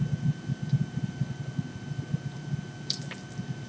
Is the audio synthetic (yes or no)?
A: no